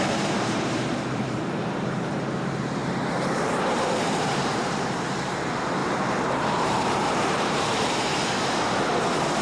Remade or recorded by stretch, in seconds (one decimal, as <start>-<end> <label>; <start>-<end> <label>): 0.0-8.1 remade; 8.1-9.0 recorded; 9.0-9.4 remade

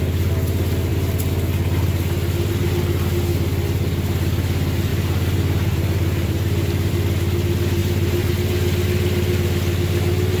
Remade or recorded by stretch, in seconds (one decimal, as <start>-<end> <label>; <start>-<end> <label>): 0.0-4.9 recorded; 4.9-6.9 remade; 6.9-7.8 recorded; 7.8-8.3 remade; 8.3-10.4 recorded

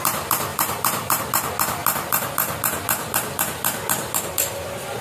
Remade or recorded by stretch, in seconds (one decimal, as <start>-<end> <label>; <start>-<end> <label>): 0.0-0.5 recorded; 0.5-1.2 remade; 1.2-5.0 recorded